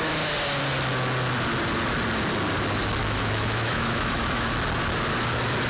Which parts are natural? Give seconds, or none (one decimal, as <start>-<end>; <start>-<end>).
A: 0.0-3.0; 4.5-5.7